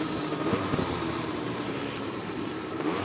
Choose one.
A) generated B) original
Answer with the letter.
A